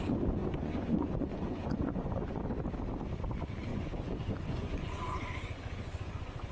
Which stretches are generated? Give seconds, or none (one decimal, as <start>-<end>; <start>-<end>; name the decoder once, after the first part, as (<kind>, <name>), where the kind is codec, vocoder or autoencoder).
0.4-2.4 (vocoder, Vocos); 3.7-6.5